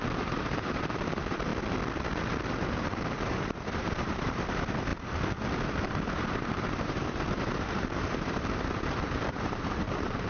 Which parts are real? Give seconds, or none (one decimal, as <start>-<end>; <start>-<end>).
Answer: 1.5-2.5; 4.9-5.6